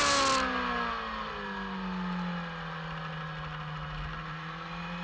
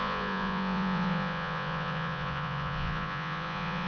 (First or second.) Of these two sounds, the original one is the first